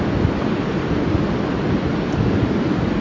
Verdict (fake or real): real